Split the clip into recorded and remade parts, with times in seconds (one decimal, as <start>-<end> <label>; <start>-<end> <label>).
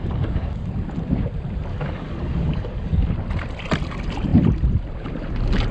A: 0.0-0.7 remade; 0.7-1.7 recorded; 1.7-3.1 remade; 3.1-5.7 recorded